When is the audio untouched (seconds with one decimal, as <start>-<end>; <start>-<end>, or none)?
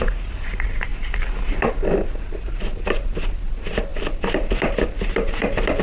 0.0-5.8